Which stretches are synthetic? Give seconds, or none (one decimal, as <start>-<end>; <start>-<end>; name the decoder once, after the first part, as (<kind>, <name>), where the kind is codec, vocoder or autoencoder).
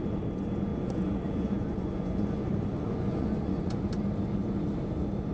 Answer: 0.7-3.9 (vocoder, Vocos)